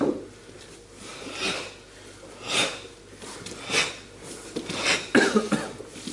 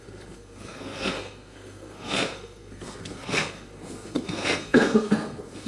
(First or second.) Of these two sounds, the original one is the first